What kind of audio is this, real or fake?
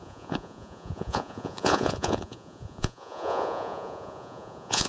fake